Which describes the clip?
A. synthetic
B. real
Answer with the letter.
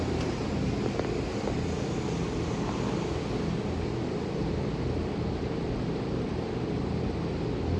B